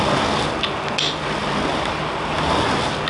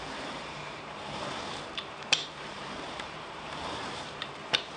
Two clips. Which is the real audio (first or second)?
first